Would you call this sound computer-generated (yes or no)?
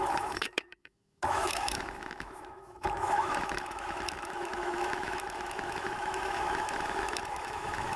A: yes